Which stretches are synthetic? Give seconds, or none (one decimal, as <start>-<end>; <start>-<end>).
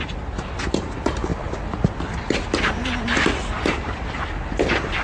none